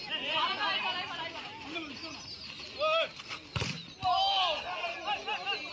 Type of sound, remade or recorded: recorded